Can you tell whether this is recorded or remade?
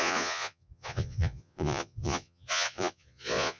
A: remade